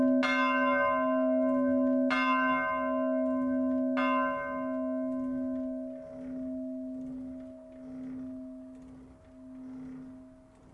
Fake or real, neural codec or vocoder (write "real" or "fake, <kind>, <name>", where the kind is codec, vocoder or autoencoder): real